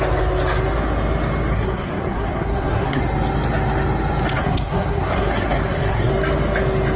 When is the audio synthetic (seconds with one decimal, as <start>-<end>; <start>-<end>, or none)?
1.5-3.0; 4.4-6.1